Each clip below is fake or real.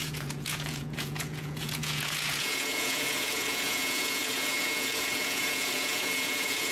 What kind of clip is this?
fake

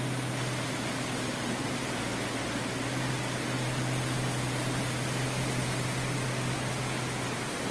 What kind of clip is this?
real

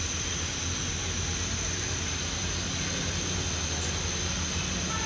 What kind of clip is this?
real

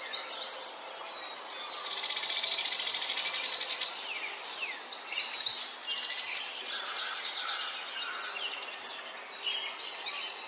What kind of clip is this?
real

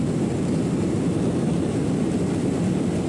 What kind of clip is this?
real